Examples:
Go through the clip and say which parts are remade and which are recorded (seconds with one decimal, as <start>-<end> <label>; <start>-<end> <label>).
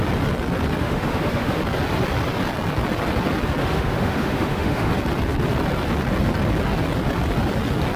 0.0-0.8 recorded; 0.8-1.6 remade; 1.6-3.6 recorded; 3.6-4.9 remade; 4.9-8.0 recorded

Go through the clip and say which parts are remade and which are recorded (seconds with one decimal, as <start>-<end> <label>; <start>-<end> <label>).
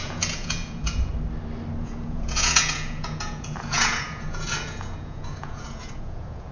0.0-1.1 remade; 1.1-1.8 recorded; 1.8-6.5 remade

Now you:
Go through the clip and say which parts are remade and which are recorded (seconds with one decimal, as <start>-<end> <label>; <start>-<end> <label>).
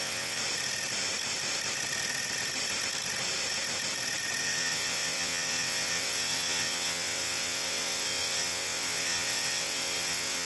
0.0-0.4 remade; 0.4-4.4 recorded; 4.4-10.4 remade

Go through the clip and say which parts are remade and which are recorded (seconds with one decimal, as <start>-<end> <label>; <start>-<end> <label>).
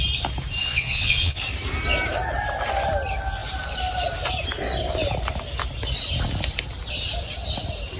0.0-0.6 recorded; 0.6-1.4 remade; 1.4-8.0 recorded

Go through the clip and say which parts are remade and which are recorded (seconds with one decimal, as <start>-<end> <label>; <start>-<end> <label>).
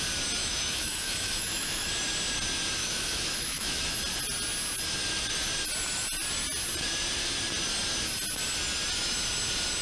0.0-0.4 recorded; 0.4-1.9 remade; 1.9-2.8 recorded; 2.8-3.8 remade; 3.8-9.8 recorded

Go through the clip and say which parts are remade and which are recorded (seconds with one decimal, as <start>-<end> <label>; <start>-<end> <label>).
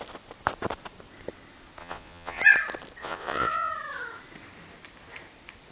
0.0-1.8 recorded; 1.8-2.4 remade; 2.4-3.0 recorded; 3.0-3.7 remade; 3.7-5.7 recorded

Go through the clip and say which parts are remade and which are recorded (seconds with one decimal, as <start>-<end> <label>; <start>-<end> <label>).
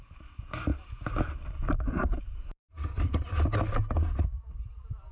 0.0-0.7 recorded; 0.7-3.2 remade; 3.2-5.1 recorded